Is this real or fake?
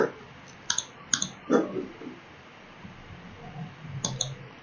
real